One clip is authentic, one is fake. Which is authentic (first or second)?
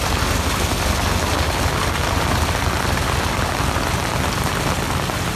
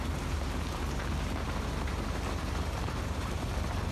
first